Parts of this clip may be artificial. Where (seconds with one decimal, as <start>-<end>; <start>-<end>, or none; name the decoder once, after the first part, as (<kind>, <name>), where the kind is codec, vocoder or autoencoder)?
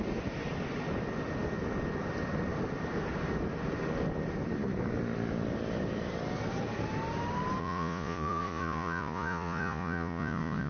7.6-10.7 (vocoder, Vocos)